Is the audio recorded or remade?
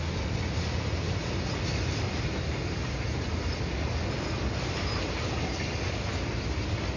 recorded